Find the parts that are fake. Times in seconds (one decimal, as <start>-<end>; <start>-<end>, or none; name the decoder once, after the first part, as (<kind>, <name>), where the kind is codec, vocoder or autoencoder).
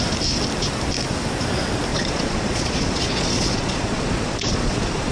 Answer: 1.9-5.1 (vocoder, Vocos)